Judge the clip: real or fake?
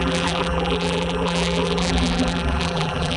fake